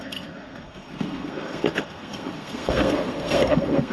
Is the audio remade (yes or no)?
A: yes